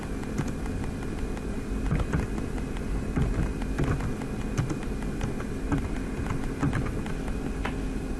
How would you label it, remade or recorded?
recorded